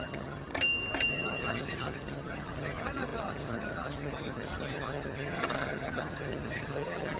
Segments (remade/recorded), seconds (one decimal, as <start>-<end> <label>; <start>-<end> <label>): 0.0-0.5 remade; 0.5-1.1 recorded; 1.1-7.2 remade